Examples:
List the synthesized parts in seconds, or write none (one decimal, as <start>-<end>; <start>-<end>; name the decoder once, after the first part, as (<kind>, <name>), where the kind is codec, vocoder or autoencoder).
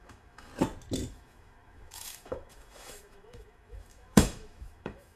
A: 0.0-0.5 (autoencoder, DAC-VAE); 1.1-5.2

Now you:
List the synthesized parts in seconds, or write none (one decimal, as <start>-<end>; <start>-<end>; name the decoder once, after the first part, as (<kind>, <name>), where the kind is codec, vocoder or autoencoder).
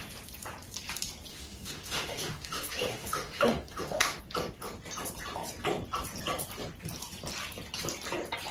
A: 1.3-4.2 (autoencoder, DAC-VAE)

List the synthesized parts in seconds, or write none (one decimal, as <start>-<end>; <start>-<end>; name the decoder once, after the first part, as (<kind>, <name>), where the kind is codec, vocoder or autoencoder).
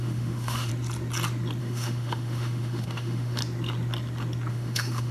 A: 0.0-0.7 (autoencoder, DAC-VAE); 1.6-3.4; 4.5-5.1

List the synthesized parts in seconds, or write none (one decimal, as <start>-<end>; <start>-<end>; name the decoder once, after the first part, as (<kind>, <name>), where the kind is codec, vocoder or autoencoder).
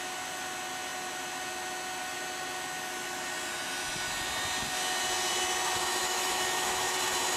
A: 6.0-6.8 (autoencoder, DAC-VAE)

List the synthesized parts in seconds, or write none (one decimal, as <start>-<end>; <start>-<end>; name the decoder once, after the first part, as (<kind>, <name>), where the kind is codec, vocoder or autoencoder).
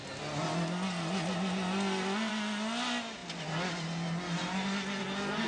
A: none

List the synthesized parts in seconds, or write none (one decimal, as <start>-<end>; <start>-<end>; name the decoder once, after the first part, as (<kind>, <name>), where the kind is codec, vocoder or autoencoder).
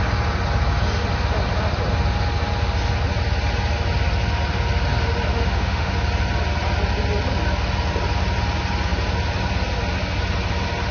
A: 5.3-5.9 (autoencoder, DAC-VAE)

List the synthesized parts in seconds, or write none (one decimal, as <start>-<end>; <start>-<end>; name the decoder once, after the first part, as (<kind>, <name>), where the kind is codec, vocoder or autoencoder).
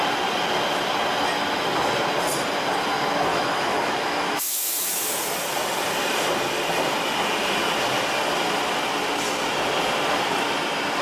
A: 3.3-5.1 (autoencoder, DAC-VAE)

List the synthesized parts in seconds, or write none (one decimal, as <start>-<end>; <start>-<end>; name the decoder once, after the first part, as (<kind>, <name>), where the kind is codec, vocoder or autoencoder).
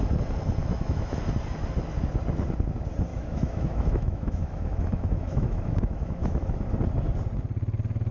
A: 0.6-1.2 (autoencoder, DAC-VAE); 3.1-6.7